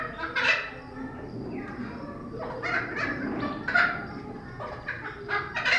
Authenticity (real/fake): real